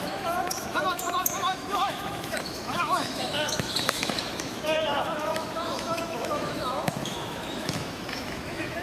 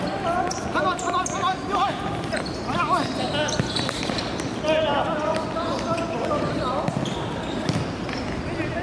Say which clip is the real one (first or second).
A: second